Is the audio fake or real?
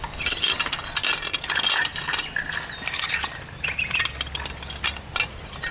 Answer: real